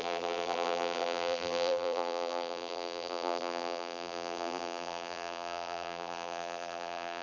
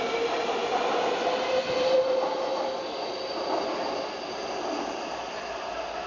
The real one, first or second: second